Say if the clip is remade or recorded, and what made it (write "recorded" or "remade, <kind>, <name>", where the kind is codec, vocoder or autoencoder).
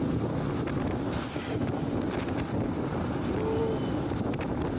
recorded